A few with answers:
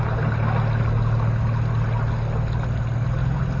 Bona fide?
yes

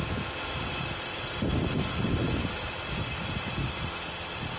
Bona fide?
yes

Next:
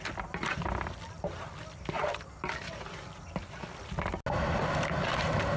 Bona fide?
yes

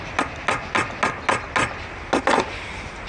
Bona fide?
yes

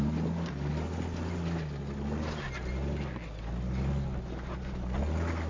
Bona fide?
yes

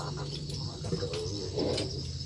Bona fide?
yes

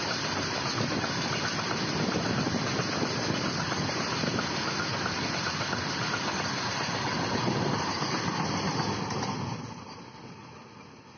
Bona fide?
yes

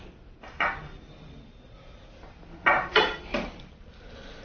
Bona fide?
yes